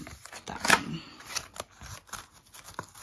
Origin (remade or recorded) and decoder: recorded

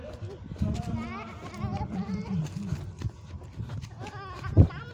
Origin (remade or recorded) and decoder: recorded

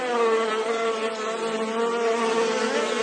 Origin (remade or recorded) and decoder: recorded